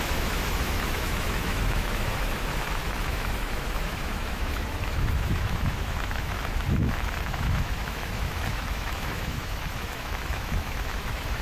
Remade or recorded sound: remade